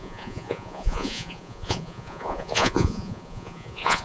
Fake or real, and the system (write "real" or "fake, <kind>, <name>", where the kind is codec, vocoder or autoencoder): fake, vocoder, Vocos